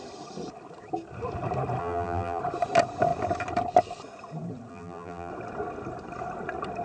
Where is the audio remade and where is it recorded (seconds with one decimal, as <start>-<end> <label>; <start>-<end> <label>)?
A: 0.0-1.8 recorded; 1.8-2.4 remade; 2.4-4.7 recorded; 4.7-5.3 remade; 5.3-6.8 recorded